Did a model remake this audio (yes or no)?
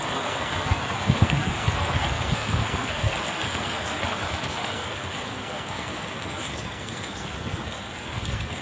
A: yes